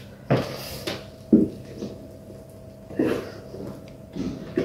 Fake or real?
real